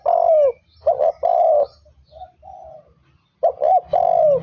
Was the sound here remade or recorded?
recorded